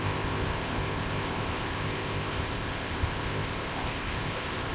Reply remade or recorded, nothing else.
remade